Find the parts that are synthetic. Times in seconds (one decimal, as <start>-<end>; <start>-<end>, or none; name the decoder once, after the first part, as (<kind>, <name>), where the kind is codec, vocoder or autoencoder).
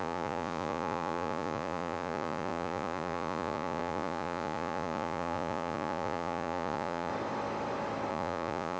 0.0-7.1 (vocoder, Vocos); 8.1-8.8